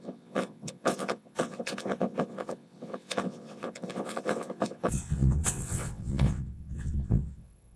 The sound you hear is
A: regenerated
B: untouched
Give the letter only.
A